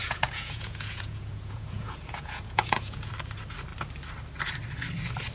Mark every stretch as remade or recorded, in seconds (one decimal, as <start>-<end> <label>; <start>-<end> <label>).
0.0-3.1 remade; 3.1-5.3 recorded